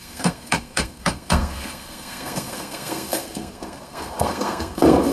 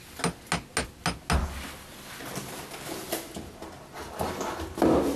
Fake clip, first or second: first